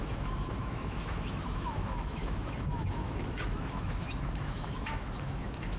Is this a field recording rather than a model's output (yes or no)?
no